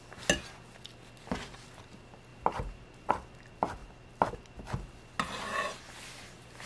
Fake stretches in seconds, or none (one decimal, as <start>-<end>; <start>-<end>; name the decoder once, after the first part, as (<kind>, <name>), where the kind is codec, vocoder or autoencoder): 3.8-4.3 (vocoder, BigVGAN v2)